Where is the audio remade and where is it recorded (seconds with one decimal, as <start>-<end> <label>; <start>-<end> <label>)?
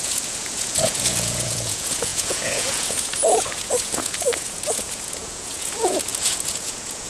0.0-7.1 remade